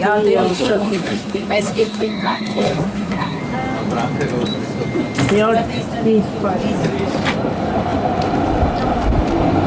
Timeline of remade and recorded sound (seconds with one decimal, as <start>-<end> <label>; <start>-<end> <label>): 0.0-0.5 recorded; 0.5-3.4 remade; 3.4-9.7 recorded